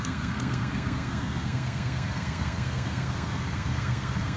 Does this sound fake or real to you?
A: fake